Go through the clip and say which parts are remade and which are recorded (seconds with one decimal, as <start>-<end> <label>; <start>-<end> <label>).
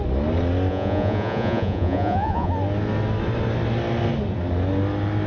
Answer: 0.0-0.7 recorded; 0.7-2.5 remade; 2.5-5.3 recorded